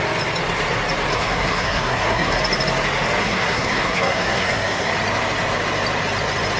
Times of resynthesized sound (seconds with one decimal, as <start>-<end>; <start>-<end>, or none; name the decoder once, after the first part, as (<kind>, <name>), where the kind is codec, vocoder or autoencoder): 1.1-2.4 (codec, SNAC); 3.2-4.9